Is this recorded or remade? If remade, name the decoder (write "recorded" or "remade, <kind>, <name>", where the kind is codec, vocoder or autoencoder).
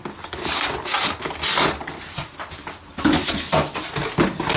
recorded